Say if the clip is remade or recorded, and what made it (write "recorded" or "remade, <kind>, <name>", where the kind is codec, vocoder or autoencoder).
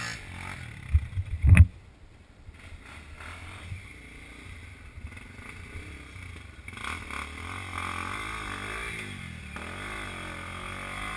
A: recorded